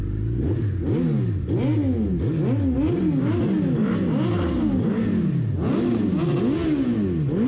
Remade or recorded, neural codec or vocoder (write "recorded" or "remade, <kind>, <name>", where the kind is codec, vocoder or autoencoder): recorded